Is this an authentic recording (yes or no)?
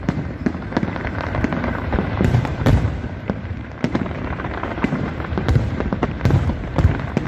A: no